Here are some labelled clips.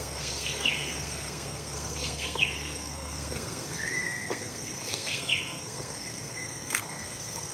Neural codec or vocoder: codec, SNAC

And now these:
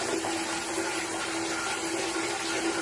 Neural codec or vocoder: none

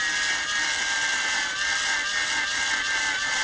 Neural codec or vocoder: none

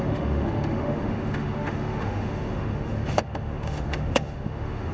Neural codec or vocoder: autoencoder, DAC-VAE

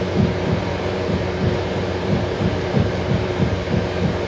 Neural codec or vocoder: vocoder, BigVGAN v2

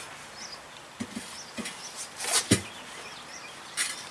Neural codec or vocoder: none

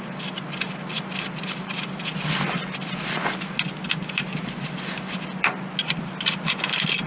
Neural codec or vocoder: none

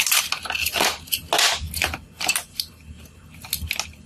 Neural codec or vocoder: none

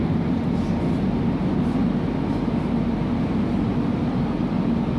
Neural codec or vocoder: none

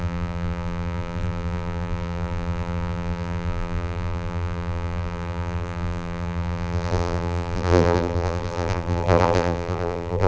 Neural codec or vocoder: vocoder, BigVGAN v2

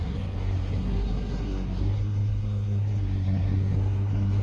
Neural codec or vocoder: codec, SNAC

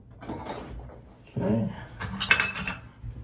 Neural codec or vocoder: none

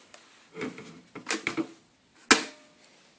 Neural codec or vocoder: none